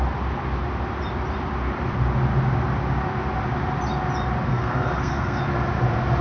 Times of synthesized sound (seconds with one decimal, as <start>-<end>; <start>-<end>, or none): 4.5-5.4